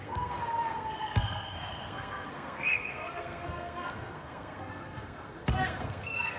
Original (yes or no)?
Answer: no